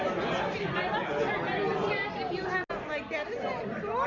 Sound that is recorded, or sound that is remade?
recorded